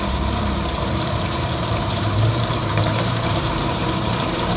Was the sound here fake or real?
fake